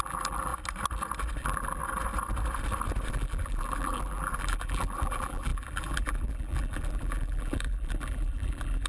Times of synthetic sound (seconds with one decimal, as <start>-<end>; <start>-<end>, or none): 0.0-0.5; 1.4-1.8; 3.1-8.9